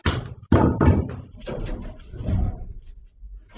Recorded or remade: recorded